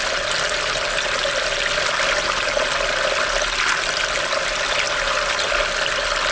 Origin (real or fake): real